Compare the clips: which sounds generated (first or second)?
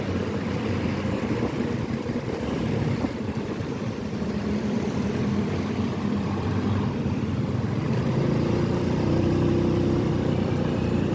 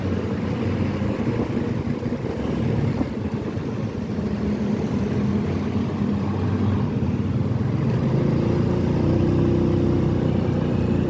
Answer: first